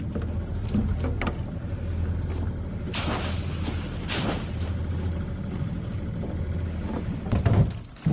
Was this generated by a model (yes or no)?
no